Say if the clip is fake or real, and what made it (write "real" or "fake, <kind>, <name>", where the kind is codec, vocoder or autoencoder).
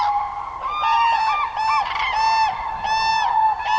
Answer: real